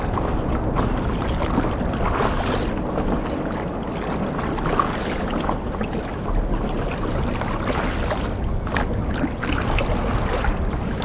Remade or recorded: recorded